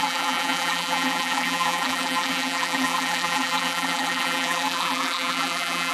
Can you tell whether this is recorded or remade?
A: remade